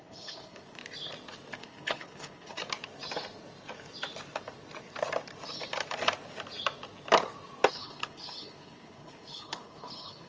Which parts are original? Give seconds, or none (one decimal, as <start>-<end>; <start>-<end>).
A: 0.8-1.6; 2.6-7.7